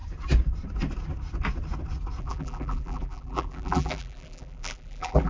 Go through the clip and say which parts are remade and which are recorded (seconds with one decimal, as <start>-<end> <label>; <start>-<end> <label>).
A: 0.0-2.2 recorded; 2.2-5.3 remade